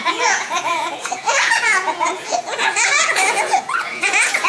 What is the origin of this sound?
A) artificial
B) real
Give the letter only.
A